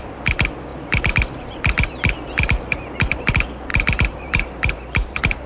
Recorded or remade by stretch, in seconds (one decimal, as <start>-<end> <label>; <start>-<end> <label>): 0.0-0.7 recorded; 0.7-3.3 remade; 3.3-3.7 recorded; 3.7-5.5 remade